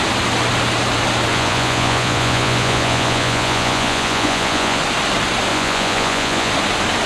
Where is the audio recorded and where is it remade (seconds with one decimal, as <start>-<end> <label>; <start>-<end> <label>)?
0.0-1.3 recorded; 1.3-4.8 remade; 4.8-5.5 recorded; 5.5-6.5 remade; 6.5-7.1 recorded